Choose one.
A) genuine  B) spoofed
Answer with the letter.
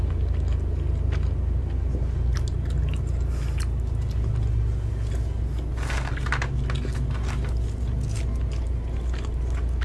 A